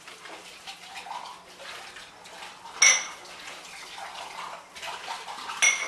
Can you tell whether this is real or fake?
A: real